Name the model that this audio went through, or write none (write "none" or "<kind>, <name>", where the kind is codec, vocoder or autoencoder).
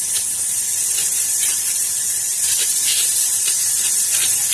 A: vocoder, BigVGAN v2